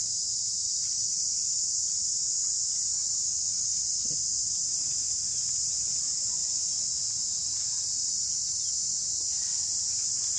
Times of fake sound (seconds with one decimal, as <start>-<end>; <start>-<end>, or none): none